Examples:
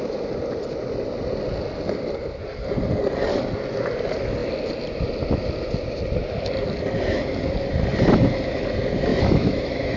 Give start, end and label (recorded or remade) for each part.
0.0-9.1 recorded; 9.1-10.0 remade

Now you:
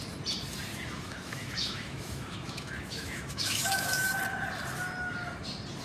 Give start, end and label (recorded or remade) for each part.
0.0-0.7 recorded; 0.7-4.2 remade; 4.2-5.8 recorded

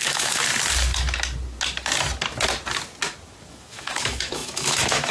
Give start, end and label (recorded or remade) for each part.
0.0-0.4 remade; 0.4-3.5 recorded; 3.5-5.1 remade

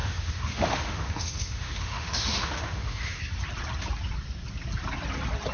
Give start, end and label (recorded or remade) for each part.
0.0-3.2 remade; 3.2-5.5 recorded

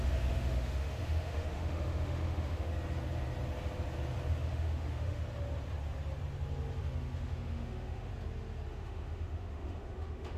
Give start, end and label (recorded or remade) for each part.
0.0-2.7 remade; 2.7-4.4 recorded; 4.4-5.2 remade; 5.2-6.8 recorded; 6.8-8.1 remade; 8.1-8.7 recorded; 8.7-10.4 remade